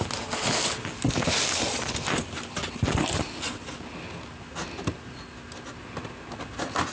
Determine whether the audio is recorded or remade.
recorded